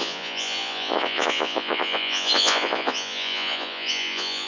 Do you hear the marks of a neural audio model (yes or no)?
yes